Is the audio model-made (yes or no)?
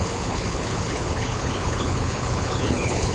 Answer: yes